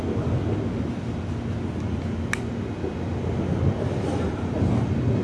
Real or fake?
real